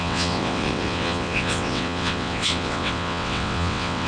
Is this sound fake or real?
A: fake